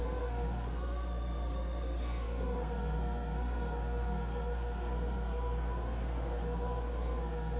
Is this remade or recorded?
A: remade